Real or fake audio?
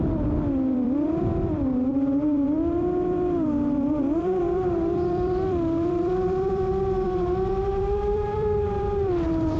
fake